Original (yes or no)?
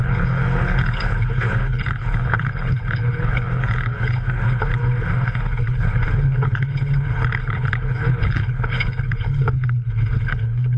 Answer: no